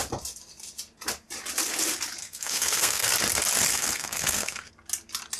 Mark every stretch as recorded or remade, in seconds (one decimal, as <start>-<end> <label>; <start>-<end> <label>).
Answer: 0.0-2.2 recorded; 2.2-3.1 remade; 3.1-3.7 recorded; 3.7-4.7 remade; 4.7-5.4 recorded